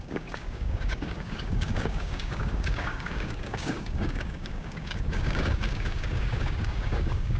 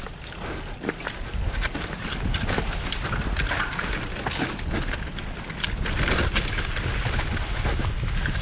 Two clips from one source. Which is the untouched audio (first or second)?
second